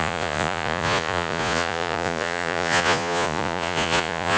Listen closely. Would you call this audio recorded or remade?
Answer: remade